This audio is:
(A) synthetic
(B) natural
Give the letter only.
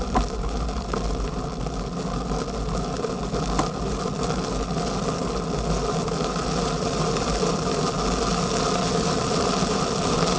B